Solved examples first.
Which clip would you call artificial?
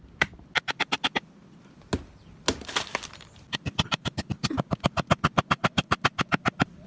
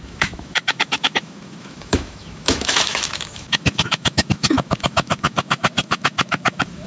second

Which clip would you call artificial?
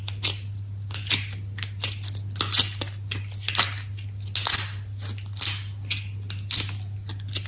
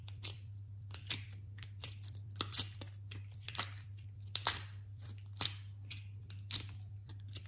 second